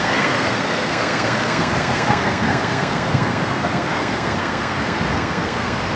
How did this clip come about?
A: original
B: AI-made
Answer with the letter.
B